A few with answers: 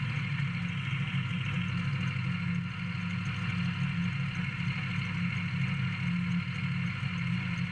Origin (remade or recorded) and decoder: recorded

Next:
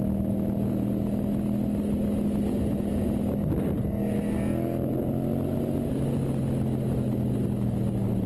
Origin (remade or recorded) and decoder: recorded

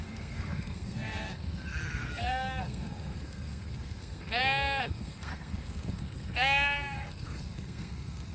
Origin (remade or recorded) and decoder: remade, codec, SNAC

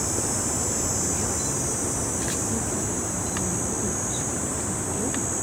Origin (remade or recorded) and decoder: recorded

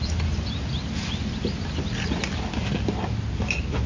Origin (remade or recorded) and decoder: recorded